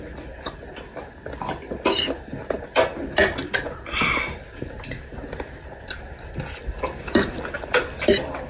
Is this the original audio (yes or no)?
yes